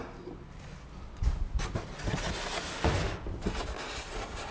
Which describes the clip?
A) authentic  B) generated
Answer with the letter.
A